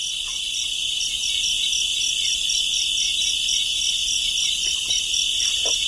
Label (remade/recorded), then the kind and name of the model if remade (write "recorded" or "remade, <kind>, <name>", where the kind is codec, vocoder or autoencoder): recorded